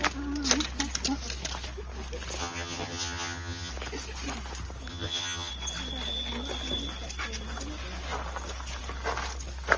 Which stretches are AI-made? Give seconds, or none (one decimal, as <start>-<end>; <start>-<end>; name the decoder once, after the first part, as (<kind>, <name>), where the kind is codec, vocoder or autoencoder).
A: 2.4-3.7 (vocoder, HiFi-GAN); 4.9-5.5